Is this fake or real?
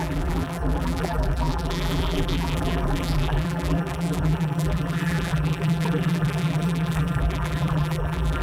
fake